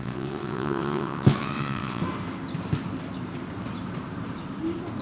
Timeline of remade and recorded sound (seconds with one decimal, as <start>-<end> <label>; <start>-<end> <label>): 0.0-2.0 remade; 2.0-5.0 recorded